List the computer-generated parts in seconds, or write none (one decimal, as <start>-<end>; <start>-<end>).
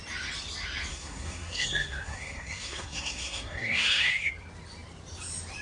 0.9-4.3